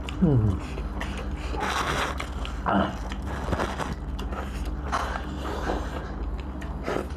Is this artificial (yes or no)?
no